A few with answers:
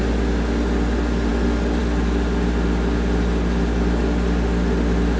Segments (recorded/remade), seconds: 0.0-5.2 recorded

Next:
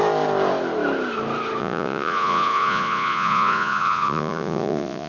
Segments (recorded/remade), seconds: 0.0-1.6 recorded; 1.6-5.1 remade

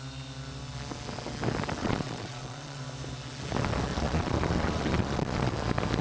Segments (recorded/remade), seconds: 0.0-1.8 recorded; 1.8-2.8 remade; 2.8-3.9 recorded; 3.9-5.5 remade; 5.5-6.0 recorded

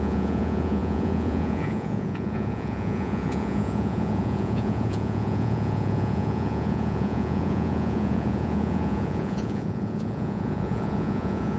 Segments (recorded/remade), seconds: 0.0-11.6 remade

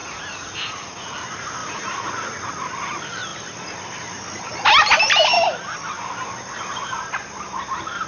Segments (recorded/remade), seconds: 0.0-1.1 remade; 1.1-1.6 recorded; 1.6-2.1 remade; 2.1-8.1 recorded

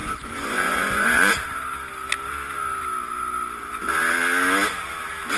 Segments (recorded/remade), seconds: 0.0-1.3 remade; 1.3-5.4 recorded

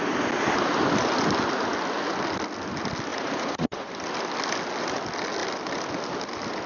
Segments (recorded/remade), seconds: 0.0-3.1 recorded; 3.1-3.9 remade; 3.9-6.7 recorded

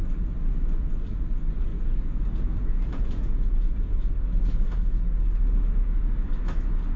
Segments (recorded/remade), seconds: 0.0-1.7 recorded; 1.7-3.9 remade; 3.9-7.0 recorded